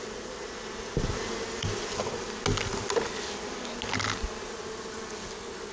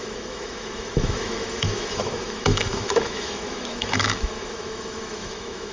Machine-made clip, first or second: second